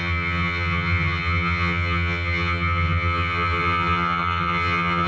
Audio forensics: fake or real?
fake